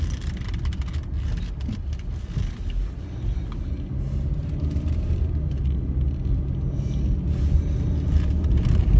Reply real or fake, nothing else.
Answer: real